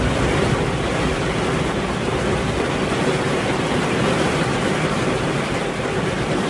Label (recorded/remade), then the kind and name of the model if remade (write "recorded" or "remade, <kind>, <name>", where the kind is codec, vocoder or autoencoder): remade, vocoder, BigVGAN v2